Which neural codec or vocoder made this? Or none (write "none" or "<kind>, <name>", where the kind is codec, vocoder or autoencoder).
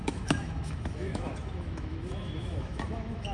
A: autoencoder, DAC-VAE